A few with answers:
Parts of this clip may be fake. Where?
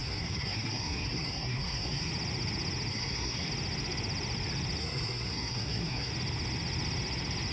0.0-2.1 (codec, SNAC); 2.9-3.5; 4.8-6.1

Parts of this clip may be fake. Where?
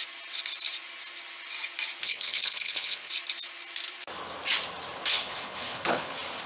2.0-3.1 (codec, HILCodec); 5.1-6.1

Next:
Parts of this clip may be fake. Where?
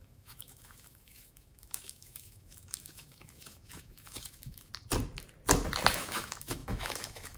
0.0-4.7 (autoencoder, DAC-VAE); 5.9-7.4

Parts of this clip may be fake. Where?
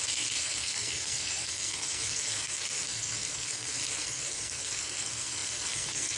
0.0-6.2 (codec, SNAC)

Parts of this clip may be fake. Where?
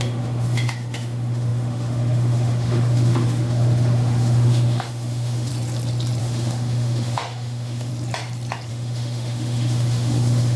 0.0-5.5 (autoencoder, DAC-VAE); 6.2-7.9; 8.7-10.6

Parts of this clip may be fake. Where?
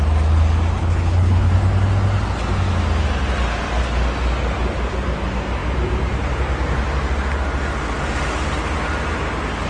0.8-1.5 (codec, HILCodec)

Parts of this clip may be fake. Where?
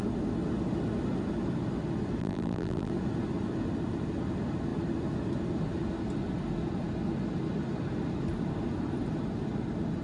2.2-2.9 (vocoder, BigVGAN v2)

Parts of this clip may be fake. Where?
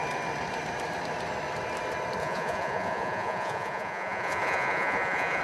2.2-5.4 (vocoder, Vocos)